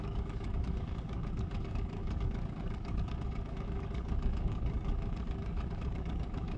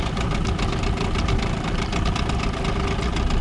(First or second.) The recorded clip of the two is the second